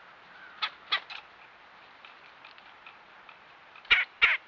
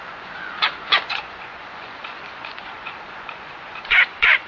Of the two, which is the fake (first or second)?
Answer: second